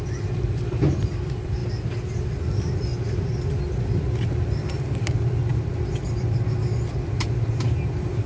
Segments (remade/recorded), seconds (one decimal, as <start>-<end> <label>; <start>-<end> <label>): 0.0-1.6 remade; 1.6-2.5 recorded; 2.5-2.9 remade; 2.9-4.4 recorded; 4.4-8.3 remade